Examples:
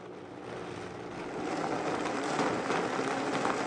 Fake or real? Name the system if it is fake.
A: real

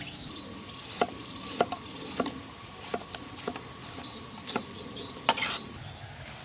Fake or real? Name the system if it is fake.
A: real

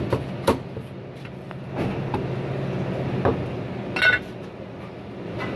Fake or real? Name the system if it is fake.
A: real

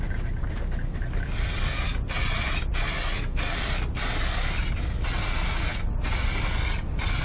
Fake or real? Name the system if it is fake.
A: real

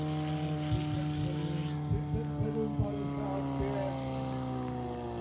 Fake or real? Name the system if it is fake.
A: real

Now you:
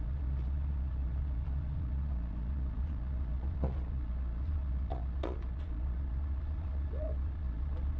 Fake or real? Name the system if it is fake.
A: fake, vocoder, Vocos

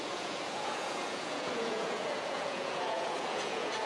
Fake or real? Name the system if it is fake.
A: fake, vocoder, Vocos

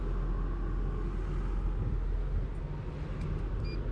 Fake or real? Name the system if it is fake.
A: real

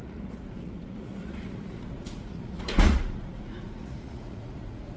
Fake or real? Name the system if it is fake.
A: fake, vocoder, Vocos